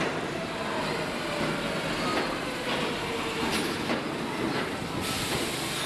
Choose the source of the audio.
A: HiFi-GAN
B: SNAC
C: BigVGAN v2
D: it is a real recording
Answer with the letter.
D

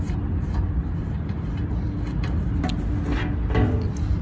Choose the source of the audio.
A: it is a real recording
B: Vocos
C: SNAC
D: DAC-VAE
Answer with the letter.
A